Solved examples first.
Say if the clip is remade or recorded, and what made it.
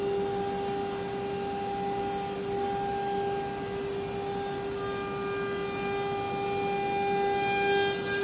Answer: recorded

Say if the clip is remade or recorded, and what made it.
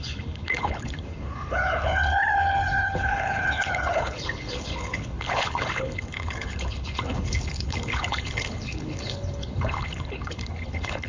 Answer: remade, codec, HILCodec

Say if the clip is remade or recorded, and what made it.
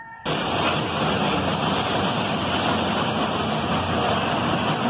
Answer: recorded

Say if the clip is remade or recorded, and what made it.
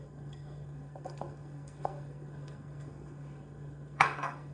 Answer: remade, codec, SNAC